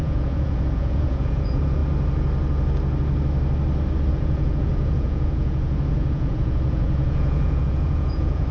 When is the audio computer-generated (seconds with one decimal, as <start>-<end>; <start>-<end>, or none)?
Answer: 0.0-1.8; 4.1-8.5